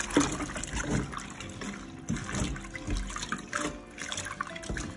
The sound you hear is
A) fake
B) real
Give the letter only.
B